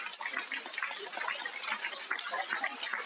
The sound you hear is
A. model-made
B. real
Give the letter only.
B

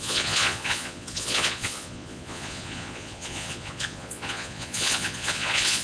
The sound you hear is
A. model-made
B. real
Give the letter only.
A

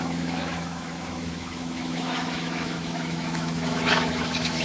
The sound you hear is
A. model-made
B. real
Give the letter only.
A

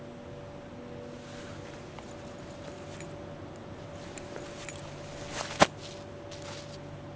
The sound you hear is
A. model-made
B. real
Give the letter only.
B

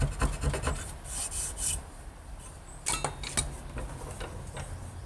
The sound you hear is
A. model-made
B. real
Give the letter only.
B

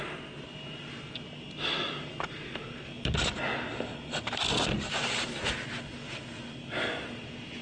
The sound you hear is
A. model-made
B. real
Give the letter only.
B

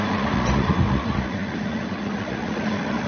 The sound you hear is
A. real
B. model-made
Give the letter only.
B